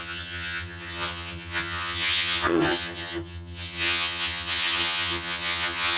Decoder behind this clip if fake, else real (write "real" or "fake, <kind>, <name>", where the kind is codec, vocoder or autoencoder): fake, vocoder, HiFi-GAN